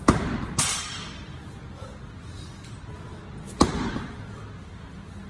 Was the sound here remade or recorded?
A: recorded